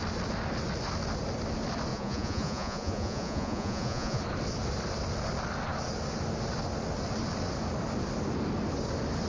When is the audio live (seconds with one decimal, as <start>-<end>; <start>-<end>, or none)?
0.0-1.9; 4.2-9.3